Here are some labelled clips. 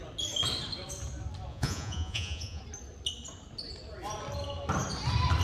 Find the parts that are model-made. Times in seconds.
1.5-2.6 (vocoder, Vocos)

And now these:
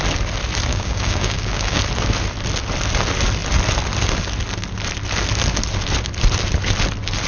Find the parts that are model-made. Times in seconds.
0.7-1.8 (codec, DAC)

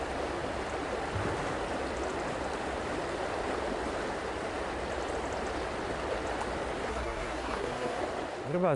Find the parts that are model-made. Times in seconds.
6.9-8.0 (codec, SNAC)

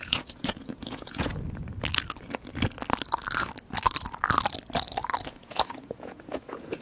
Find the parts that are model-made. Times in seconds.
0.0-1.3 (vocoder, Vocos); 5.4-6.8

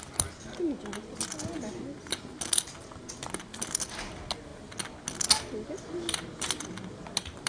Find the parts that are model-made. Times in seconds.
none

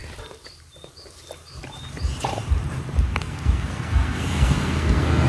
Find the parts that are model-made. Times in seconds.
3.1-5.3 (codec, SNAC)